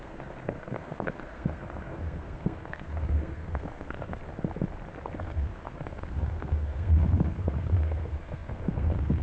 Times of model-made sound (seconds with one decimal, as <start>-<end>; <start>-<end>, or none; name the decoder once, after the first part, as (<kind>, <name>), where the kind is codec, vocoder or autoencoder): 0.0-4.2 (codec, SNAC); 5.2-9.2